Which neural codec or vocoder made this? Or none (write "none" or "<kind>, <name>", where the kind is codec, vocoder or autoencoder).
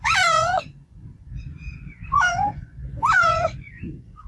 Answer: vocoder, Vocos